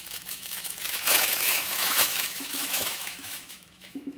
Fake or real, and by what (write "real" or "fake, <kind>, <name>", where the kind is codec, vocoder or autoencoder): fake, autoencoder, DAC-VAE